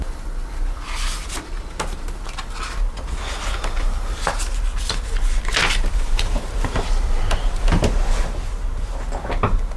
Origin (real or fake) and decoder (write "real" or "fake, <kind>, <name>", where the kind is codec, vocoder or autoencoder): real